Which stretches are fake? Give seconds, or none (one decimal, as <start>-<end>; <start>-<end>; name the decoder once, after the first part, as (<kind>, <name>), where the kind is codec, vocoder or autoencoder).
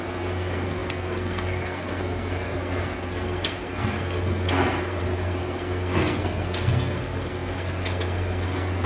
0.0-8.9 (codec, SNAC)